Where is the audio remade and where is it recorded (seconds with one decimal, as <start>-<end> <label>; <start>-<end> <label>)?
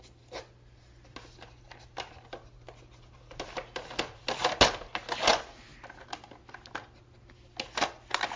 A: 0.0-8.4 recorded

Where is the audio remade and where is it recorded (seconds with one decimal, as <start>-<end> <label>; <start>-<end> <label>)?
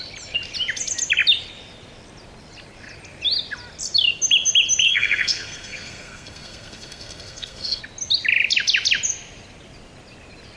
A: 0.0-4.8 recorded; 4.8-7.8 remade; 7.8-10.6 recorded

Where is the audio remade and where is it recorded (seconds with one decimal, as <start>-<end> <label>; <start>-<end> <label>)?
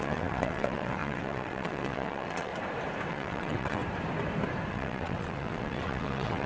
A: 0.0-2.5 remade; 2.5-3.1 recorded; 3.1-3.8 remade; 3.8-4.7 recorded; 4.7-6.5 remade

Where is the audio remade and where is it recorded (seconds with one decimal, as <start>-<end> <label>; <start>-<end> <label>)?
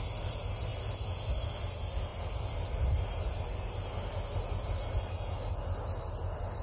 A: 0.0-6.6 recorded